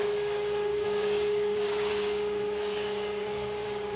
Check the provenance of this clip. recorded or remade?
remade